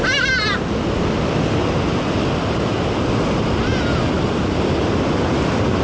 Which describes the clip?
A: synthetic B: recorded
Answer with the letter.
B